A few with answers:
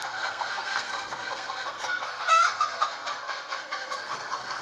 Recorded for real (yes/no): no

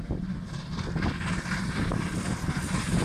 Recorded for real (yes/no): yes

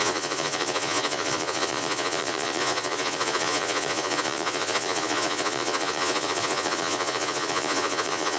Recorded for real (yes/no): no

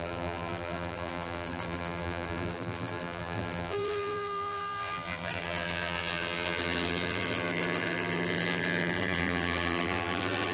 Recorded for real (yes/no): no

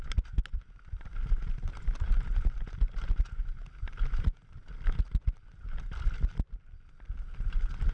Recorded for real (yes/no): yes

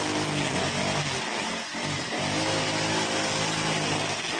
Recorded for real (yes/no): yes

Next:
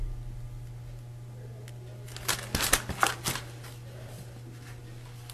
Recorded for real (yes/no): yes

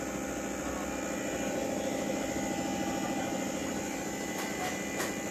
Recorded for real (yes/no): yes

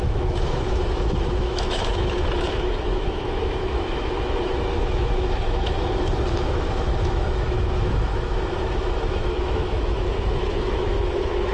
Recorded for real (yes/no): no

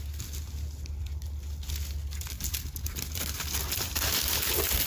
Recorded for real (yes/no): yes